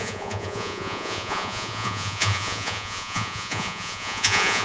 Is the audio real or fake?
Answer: fake